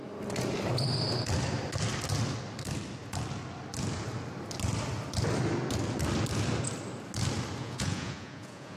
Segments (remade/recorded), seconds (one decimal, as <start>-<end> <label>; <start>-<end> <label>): 0.0-7.6 recorded; 7.6-8.8 remade